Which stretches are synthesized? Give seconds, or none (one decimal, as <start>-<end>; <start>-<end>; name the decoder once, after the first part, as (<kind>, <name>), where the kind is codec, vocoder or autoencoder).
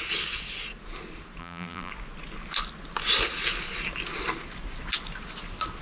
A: 1.4-1.9 (vocoder, BigVGAN v2)